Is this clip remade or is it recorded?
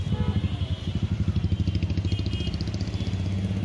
recorded